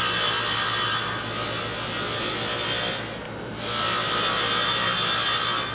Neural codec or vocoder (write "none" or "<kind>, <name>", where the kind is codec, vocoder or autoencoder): none